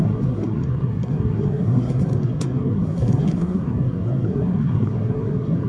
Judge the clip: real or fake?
fake